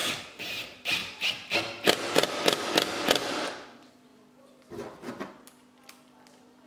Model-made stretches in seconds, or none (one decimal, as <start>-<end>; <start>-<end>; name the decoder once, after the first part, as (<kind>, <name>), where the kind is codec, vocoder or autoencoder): none